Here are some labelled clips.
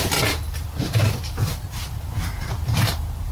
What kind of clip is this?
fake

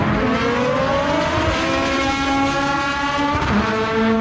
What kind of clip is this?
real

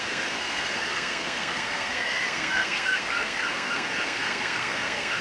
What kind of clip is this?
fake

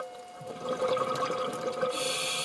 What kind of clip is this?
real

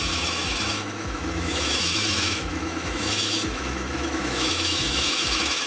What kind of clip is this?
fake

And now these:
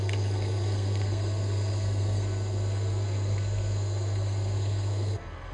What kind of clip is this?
fake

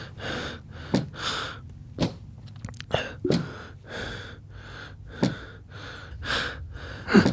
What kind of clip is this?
real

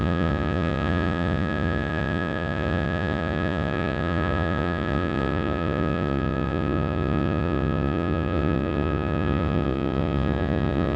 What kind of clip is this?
fake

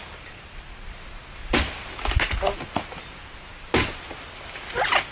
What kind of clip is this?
real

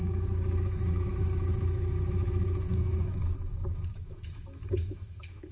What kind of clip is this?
fake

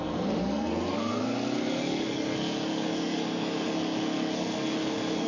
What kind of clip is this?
fake